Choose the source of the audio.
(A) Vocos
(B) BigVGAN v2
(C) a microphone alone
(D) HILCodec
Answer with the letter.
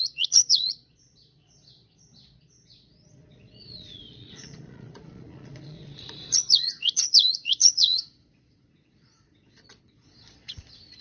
A